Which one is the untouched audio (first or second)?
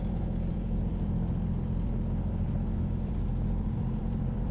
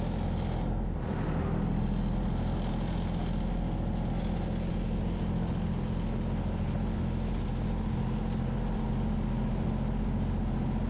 second